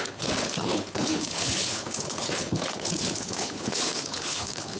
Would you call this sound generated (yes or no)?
yes